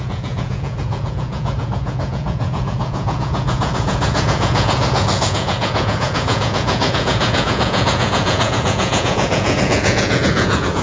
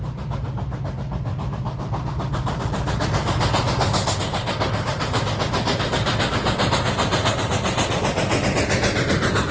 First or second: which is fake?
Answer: first